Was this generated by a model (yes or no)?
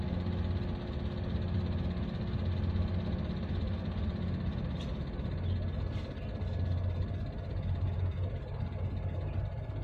no